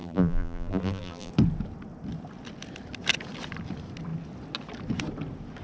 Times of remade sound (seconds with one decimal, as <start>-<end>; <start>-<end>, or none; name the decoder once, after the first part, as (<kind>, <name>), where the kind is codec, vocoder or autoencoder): 0.0-1.3 (vocoder, BigVGAN v2)